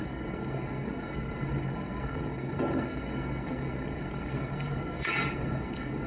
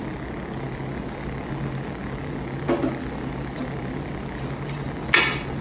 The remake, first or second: first